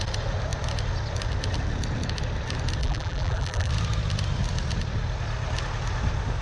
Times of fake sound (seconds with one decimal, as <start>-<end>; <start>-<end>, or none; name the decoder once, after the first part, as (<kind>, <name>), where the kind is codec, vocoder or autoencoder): 2.8-3.7 (vocoder, BigVGAN v2)